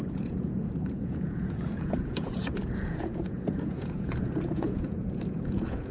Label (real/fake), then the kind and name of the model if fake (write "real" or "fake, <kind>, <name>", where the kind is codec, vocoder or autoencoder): fake, vocoder, Vocos